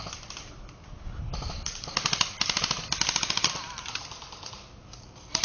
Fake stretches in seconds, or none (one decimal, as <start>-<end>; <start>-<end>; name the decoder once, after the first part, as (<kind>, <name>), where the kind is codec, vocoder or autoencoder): none